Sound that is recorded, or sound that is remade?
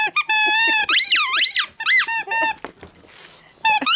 recorded